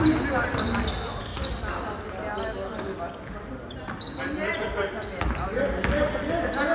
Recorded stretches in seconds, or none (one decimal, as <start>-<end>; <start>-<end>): 0.0-6.7